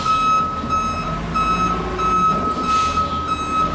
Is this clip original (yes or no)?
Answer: yes